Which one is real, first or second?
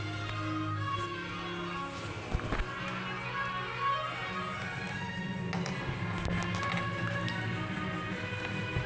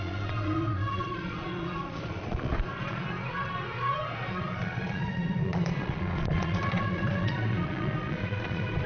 first